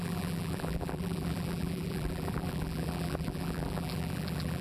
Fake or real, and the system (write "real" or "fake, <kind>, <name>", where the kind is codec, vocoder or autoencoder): fake, vocoder, BigVGAN v2